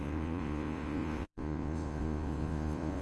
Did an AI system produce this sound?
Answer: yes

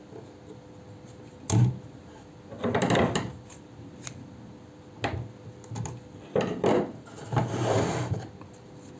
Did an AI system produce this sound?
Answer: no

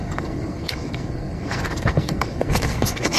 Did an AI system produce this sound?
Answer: yes